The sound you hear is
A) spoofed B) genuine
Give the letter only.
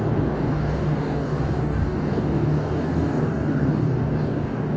A